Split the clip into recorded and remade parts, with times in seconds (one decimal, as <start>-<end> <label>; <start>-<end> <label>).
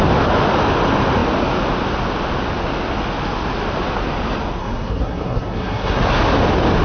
0.0-4.6 recorded; 4.6-6.0 remade; 6.0-6.8 recorded